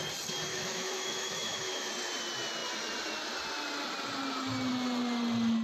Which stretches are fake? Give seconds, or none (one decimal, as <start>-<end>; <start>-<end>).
0.5-1.9